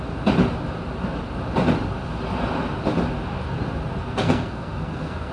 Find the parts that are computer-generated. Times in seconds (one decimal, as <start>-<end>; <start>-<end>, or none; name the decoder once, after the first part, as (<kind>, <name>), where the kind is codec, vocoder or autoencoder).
4.0-5.3 (codec, SNAC)